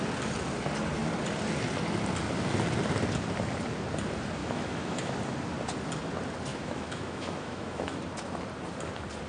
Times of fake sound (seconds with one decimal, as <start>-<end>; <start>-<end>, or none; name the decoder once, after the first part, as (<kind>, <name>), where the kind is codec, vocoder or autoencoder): 4.4-5.1 (autoencoder, DAC-VAE); 6.5-8.0